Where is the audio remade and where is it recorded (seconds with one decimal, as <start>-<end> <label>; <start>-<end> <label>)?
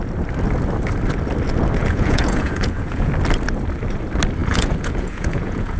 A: 0.0-1.8 recorded; 1.8-3.1 remade; 3.1-4.4 recorded; 4.4-5.8 remade